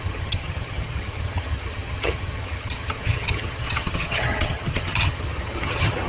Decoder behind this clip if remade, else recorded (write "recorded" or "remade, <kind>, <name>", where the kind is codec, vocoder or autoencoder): remade, vocoder, HiFi-GAN